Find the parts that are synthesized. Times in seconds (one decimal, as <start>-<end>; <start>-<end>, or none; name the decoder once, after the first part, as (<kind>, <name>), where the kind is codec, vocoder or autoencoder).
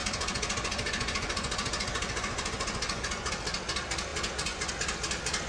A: 0.0-3.3 (vocoder, Vocos); 4.1-4.7